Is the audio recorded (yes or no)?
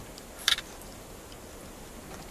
yes